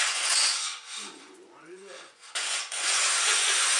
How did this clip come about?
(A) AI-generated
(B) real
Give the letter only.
A